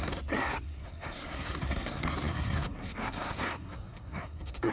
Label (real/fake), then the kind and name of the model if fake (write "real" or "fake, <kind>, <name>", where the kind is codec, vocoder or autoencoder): fake, codec, SNAC